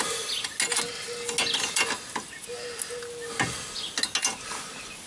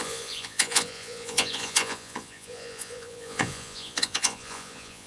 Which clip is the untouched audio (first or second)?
first